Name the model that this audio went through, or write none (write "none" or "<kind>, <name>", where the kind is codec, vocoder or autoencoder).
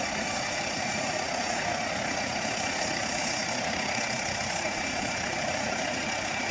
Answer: vocoder, Vocos